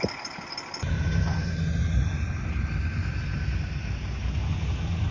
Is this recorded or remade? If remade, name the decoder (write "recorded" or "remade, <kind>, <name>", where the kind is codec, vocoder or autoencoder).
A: recorded